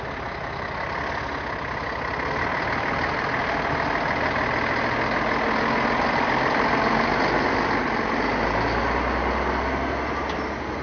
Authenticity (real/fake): real